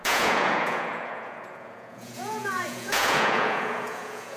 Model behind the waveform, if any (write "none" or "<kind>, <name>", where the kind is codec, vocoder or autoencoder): vocoder, Vocos